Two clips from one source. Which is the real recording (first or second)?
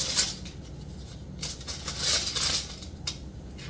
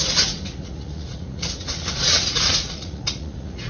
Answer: first